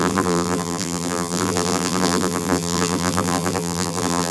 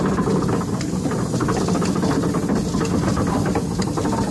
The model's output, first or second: first